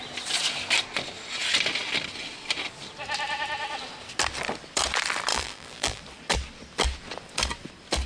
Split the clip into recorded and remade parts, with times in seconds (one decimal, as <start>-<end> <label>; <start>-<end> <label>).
0.0-5.3 recorded; 5.3-6.0 remade; 6.0-8.1 recorded